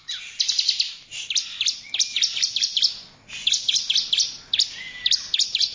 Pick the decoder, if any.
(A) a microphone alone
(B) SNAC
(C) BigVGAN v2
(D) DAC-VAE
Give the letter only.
A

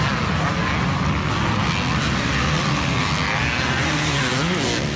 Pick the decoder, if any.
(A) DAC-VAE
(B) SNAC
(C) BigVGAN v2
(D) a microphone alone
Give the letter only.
D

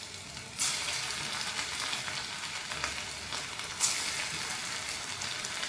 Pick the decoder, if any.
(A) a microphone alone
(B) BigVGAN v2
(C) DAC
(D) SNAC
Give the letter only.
A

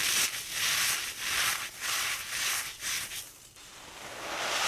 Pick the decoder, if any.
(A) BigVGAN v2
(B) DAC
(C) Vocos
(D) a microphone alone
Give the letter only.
D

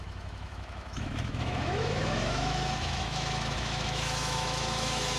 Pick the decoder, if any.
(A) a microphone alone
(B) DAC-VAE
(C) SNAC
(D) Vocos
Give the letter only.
B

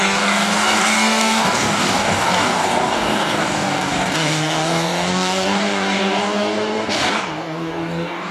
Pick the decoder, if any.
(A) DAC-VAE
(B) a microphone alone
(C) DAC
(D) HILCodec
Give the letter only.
C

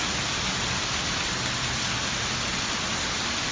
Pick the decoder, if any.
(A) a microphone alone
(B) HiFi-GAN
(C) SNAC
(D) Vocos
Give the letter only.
A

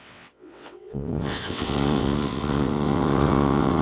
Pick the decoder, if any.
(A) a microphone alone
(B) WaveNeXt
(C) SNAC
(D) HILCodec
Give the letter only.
B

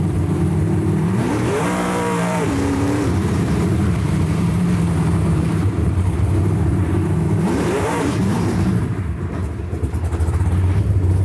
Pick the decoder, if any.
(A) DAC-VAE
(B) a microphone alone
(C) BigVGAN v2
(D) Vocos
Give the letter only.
C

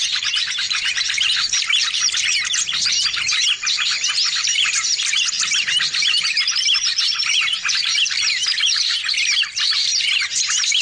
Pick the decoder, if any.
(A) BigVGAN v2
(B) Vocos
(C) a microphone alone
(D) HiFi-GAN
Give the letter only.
A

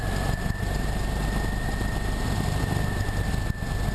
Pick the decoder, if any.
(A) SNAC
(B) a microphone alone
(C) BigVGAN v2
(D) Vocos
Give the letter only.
B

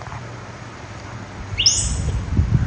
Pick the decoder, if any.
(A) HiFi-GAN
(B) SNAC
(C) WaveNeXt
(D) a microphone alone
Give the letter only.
D